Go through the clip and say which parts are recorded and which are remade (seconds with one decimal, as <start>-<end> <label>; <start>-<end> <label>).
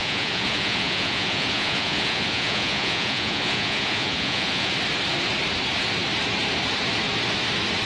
0.0-4.7 remade; 4.7-7.9 recorded